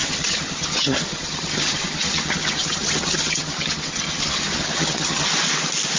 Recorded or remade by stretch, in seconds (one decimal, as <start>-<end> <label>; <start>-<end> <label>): 0.0-5.3 remade; 5.3-6.0 recorded